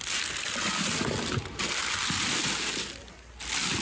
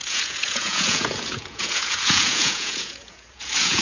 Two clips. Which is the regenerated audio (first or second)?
second